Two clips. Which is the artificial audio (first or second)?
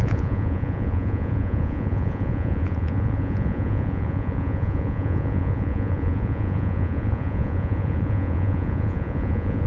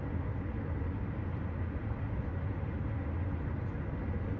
first